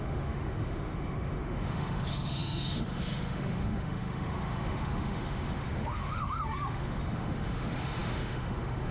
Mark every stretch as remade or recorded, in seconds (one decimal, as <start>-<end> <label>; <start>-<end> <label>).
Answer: 0.0-8.9 remade